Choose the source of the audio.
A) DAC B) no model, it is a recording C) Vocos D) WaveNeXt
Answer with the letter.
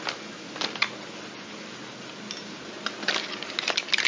B